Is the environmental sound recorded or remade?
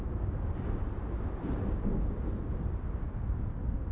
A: recorded